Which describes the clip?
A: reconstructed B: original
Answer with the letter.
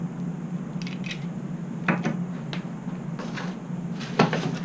B